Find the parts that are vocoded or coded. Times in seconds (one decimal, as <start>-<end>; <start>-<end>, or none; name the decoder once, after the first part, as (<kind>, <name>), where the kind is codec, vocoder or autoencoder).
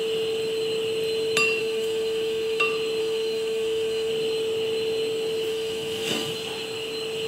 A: 1.6-2.6 (autoencoder, DAC-VAE); 3.0-4.1; 5.5-6.3